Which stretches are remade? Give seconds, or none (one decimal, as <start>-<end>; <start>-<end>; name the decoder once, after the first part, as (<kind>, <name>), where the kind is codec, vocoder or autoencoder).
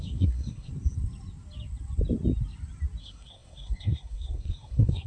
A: 0.0-0.7 (codec, SNAC); 3.0-5.1